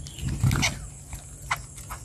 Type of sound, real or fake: real